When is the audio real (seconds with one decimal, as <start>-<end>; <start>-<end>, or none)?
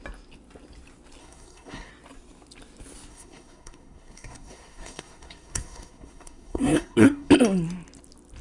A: 0.0-1.2; 1.9-3.1; 7.3-8.4